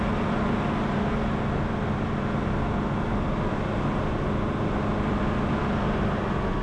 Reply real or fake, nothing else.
real